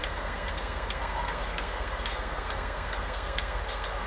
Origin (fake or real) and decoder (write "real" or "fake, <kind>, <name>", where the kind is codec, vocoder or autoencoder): fake, codec, SNAC